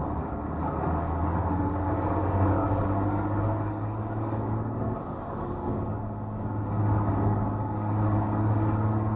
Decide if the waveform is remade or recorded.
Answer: remade